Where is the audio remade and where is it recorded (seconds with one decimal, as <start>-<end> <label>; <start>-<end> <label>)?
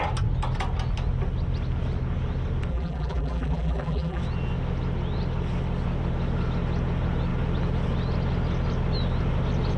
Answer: 0.0-2.7 recorded; 2.7-4.2 remade; 4.2-9.8 recorded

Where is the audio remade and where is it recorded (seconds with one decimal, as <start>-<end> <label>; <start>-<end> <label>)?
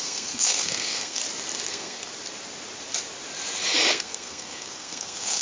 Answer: 0.0-1.2 remade; 1.2-1.7 recorded; 1.7-2.1 remade; 2.1-3.9 recorded; 3.9-5.4 remade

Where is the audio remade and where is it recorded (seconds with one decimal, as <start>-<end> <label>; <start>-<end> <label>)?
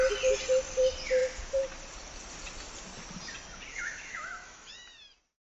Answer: 0.0-3.7 recorded; 3.7-5.0 remade; 5.0-5.6 recorded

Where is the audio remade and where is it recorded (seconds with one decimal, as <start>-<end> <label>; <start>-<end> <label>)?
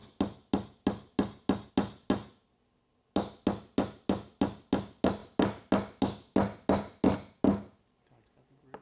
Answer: 0.0-8.8 recorded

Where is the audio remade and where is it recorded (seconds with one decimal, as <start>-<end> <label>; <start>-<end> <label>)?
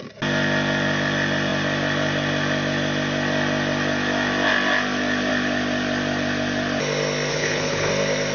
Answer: 0.0-7.3 recorded; 7.3-7.9 remade; 7.9-8.3 recorded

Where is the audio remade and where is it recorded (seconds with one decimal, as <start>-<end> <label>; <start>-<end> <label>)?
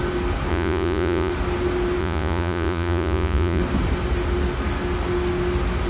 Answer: 0.0-0.5 recorded; 0.5-1.3 remade; 1.3-2.0 recorded; 2.0-3.6 remade; 3.6-5.9 recorded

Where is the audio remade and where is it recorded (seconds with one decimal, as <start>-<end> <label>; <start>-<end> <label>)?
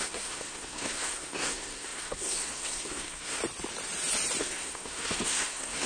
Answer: 0.0-3.4 remade; 3.4-4.4 recorded; 4.4-5.9 remade